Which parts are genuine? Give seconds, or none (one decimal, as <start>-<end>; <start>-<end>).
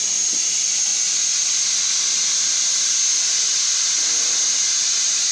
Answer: 0.0-5.3